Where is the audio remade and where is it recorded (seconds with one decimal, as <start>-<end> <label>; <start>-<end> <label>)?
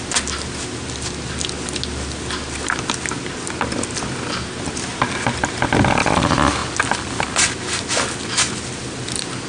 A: 0.0-9.5 recorded